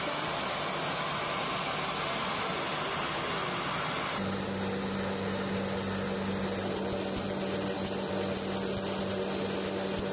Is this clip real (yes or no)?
yes